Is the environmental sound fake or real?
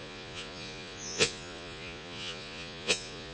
fake